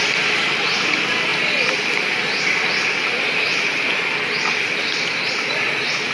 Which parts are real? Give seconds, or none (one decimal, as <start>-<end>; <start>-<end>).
0.0-6.1